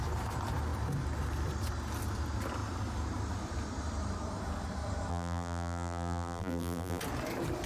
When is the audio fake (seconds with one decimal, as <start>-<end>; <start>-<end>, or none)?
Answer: 5.1-7.0